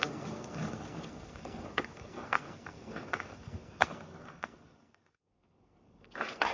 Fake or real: fake